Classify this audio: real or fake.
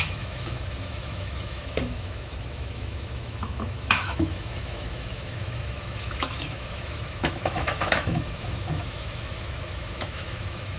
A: fake